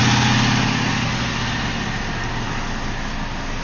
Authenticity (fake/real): real